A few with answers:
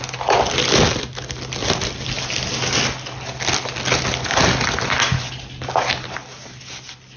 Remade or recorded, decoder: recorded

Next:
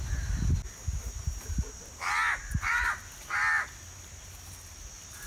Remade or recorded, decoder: recorded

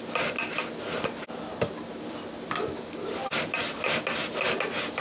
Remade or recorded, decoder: recorded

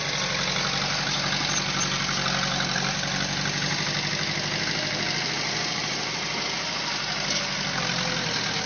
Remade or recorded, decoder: recorded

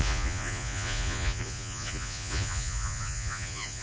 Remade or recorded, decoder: remade, vocoder, Vocos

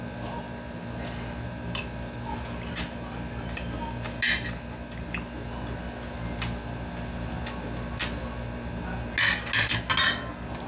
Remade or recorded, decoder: recorded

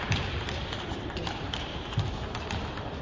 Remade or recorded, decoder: remade, vocoder, BigVGAN v2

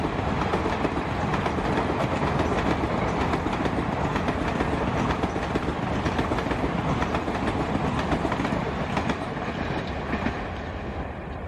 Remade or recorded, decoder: recorded